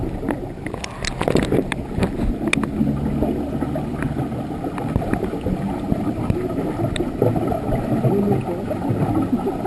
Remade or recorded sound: recorded